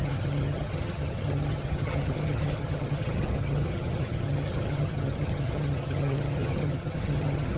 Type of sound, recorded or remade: remade